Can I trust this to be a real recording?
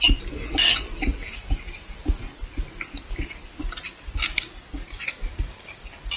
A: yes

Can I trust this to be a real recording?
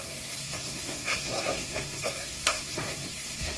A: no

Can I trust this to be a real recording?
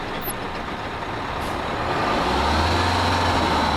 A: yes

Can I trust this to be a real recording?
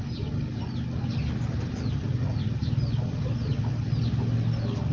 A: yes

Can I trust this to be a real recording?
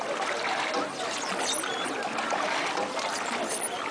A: yes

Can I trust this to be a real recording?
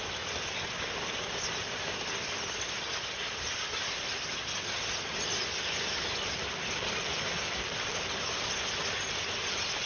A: yes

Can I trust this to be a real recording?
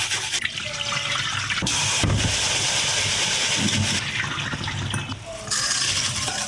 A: yes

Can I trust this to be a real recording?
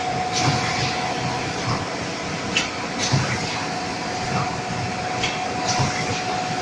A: yes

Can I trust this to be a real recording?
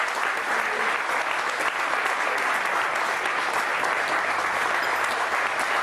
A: yes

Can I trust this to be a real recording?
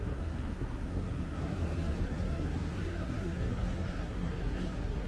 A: no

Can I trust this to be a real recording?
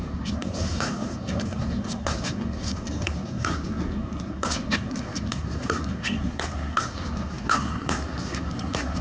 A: no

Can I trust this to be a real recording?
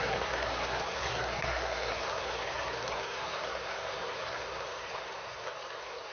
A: no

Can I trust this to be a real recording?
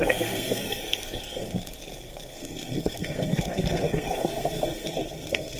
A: no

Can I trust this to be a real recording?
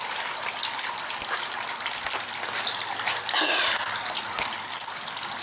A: yes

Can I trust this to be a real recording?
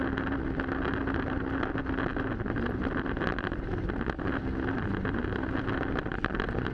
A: yes